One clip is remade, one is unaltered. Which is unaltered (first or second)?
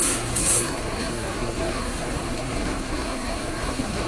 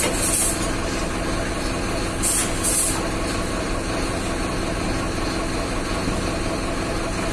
second